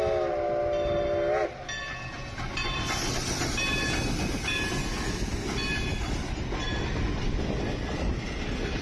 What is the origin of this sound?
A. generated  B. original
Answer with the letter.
B